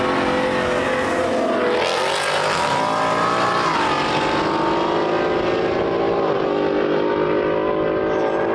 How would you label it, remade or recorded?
recorded